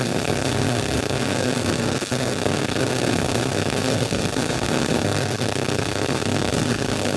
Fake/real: fake